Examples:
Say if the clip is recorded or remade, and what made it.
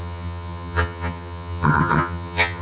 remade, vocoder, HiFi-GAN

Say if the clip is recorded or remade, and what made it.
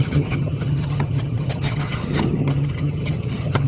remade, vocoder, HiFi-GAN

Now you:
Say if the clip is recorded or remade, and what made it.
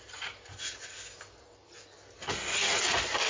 recorded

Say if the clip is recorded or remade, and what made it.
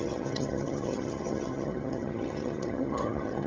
remade, vocoder, HiFi-GAN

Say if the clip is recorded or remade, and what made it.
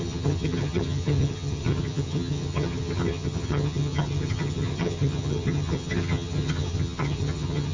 remade, vocoder, HiFi-GAN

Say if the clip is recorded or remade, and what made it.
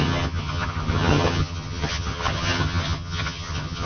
remade, vocoder, HiFi-GAN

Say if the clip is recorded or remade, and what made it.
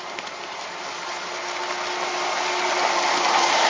recorded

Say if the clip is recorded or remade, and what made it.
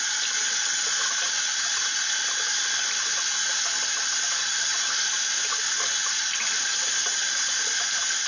recorded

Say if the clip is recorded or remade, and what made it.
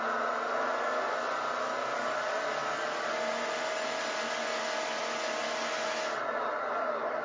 recorded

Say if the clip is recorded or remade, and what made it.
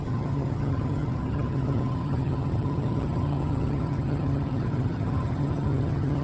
remade, vocoder, HiFi-GAN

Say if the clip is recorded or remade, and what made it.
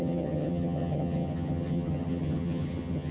remade, vocoder, HiFi-GAN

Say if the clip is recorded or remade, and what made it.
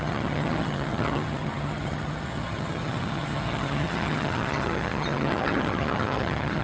remade, vocoder, HiFi-GAN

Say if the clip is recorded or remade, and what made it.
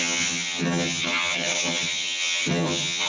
remade, vocoder, HiFi-GAN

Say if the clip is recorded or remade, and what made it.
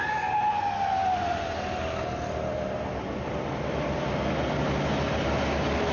recorded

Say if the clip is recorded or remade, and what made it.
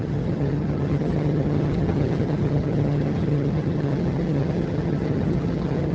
remade, vocoder, HiFi-GAN